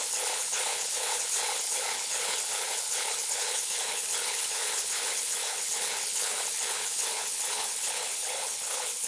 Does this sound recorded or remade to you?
remade